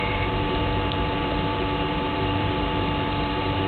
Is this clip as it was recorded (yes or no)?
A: no